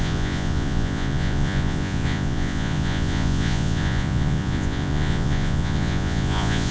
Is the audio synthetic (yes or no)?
yes